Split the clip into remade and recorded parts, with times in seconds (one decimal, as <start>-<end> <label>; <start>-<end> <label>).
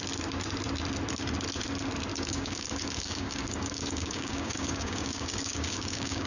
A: 0.0-2.1 recorded; 2.1-6.3 remade